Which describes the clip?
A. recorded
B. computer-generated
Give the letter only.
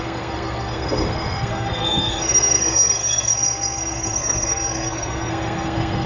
B